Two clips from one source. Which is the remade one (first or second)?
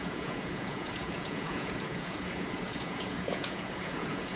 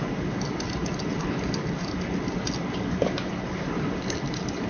first